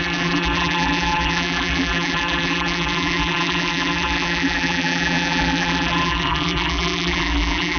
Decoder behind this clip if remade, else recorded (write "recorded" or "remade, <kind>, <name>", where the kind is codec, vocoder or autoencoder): remade, vocoder, BigVGAN v2